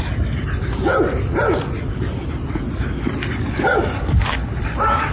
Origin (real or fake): real